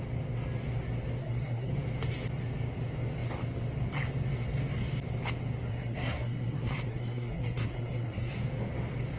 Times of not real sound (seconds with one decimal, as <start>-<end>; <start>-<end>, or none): 1.2-1.7; 5.7-8.3